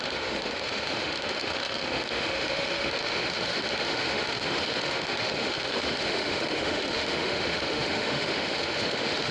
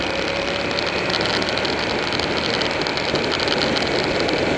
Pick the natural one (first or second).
second